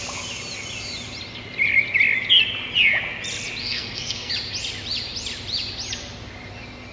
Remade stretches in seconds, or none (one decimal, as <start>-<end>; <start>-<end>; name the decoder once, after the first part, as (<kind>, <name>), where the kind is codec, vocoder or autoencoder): 3.6-4.3 (codec, SNAC)